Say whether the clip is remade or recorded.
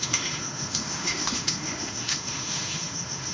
remade